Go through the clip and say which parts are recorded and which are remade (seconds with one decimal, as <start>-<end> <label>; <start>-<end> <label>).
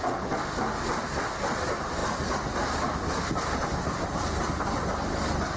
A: 0.0-5.6 recorded